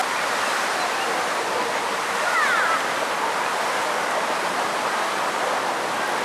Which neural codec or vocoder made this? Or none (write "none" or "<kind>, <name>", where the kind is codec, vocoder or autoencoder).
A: none